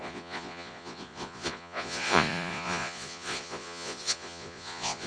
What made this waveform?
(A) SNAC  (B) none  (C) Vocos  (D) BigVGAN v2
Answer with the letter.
C